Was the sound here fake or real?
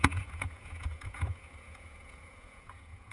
fake